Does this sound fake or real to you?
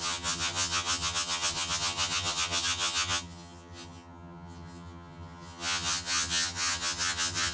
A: fake